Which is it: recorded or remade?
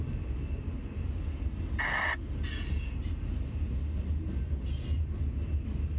recorded